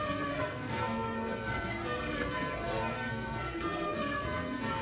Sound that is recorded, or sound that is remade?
remade